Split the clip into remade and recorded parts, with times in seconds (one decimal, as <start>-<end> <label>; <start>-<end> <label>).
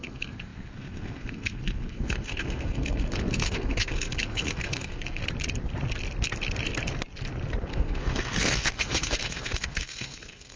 0.0-5.2 remade; 5.2-7.7 recorded; 7.7-10.6 remade